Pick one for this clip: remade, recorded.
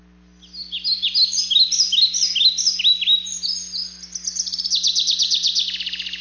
recorded